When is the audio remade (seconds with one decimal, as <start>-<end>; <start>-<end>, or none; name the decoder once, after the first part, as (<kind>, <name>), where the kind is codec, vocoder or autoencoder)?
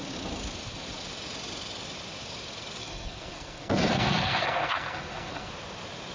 2.8-5.5 (codec, SNAC)